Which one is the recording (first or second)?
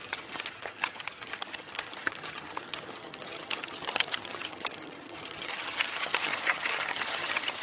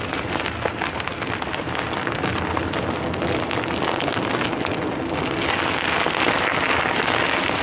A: second